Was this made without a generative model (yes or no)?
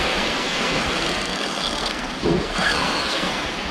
no